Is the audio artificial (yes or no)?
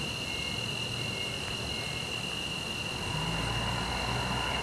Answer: no